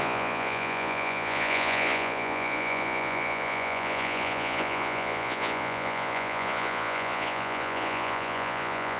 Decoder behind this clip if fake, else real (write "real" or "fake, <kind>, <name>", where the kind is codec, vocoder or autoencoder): fake, vocoder, Vocos